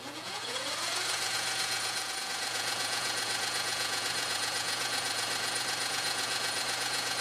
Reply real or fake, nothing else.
fake